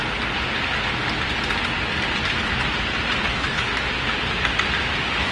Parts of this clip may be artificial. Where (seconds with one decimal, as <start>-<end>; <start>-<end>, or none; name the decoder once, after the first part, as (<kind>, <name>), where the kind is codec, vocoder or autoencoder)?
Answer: 3.2-3.7 (codec, HILCodec)